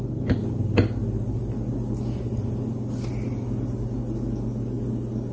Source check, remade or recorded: recorded